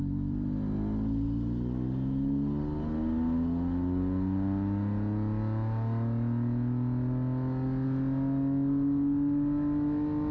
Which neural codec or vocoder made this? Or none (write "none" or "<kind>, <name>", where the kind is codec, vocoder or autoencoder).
none